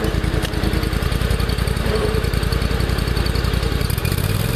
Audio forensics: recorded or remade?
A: remade